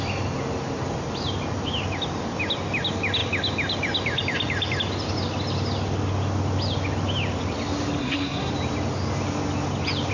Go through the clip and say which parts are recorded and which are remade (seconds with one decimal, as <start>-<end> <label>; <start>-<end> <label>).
0.0-8.0 recorded; 8.0-8.5 remade; 8.5-10.1 recorded